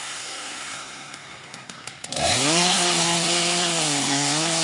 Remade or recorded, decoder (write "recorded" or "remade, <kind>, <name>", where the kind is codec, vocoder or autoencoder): remade, codec, SNAC